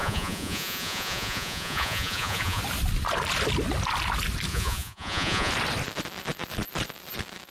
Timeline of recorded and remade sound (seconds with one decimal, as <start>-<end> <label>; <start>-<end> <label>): 0.0-2.6 remade; 2.6-4.5 recorded; 4.5-5.5 remade; 5.5-7.5 recorded

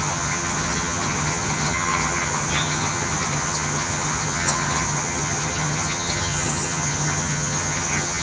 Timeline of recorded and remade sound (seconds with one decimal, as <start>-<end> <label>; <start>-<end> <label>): 0.0-8.2 remade

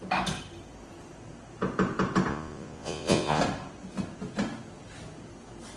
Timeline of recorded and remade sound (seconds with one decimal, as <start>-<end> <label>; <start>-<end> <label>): 0.0-2.3 recorded; 2.3-3.4 remade; 3.4-5.8 recorded

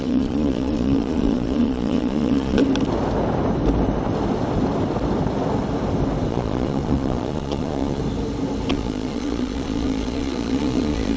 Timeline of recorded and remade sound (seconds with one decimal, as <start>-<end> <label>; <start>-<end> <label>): 0.0-2.6 remade; 2.6-6.3 recorded; 6.3-8.0 remade; 8.0-8.7 recorded; 8.7-11.2 remade

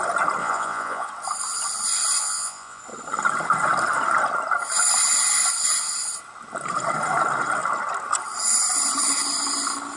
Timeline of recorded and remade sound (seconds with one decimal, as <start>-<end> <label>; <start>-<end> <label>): 0.0-0.4 recorded; 0.4-1.1 remade; 1.1-2.2 recorded; 2.2-2.8 remade; 2.8-10.0 recorded

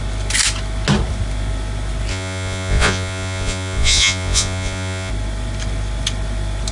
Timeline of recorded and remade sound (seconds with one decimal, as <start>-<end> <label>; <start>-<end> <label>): 0.0-2.1 recorded; 2.1-5.1 remade; 5.1-6.7 recorded

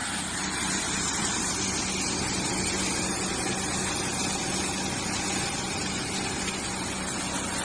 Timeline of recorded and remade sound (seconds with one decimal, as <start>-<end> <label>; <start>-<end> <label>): 0.0-1.6 remade; 1.6-7.6 recorded